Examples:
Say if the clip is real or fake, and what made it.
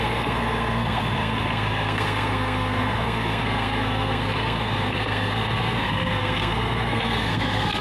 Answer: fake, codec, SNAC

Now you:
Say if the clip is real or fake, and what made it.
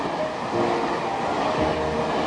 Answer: real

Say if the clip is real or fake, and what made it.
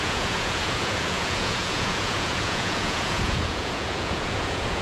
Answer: fake, vocoder, Vocos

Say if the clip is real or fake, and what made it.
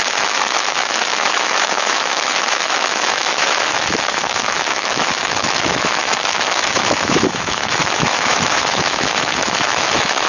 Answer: fake, autoencoder, DAC-VAE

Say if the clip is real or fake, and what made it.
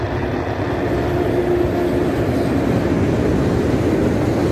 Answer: real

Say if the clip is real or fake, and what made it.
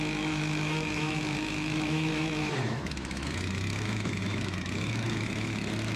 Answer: fake, autoencoder, DAC-VAE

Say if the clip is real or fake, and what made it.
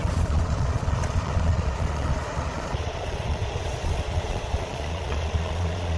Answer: fake, vocoder, Vocos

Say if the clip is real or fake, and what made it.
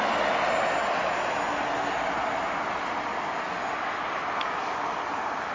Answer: real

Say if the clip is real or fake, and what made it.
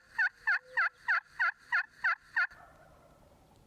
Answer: real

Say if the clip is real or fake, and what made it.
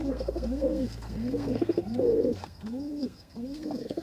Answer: fake, codec, SNAC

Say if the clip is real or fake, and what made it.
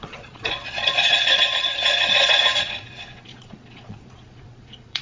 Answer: fake, vocoder, Vocos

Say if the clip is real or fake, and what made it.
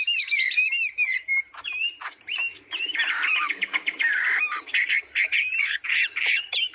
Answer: fake, vocoder, BigVGAN v2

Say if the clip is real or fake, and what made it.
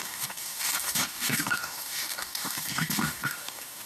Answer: fake, codec, DAC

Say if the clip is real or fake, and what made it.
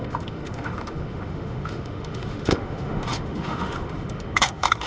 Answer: fake, autoencoder, DAC-VAE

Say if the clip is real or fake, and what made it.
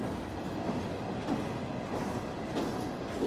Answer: real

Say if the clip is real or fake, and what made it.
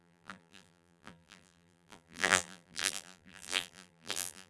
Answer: fake, vocoder, BigVGAN v2